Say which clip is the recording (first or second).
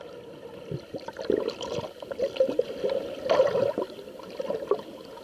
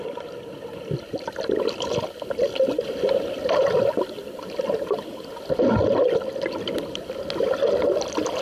second